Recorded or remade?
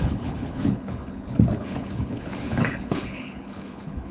remade